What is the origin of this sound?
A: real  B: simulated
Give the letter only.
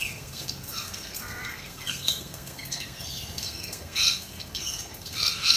B